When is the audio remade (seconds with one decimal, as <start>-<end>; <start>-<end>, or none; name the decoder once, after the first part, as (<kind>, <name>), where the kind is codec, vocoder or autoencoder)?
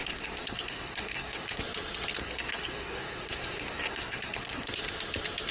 0.0-1.6 (codec, SNAC); 2.2-4.7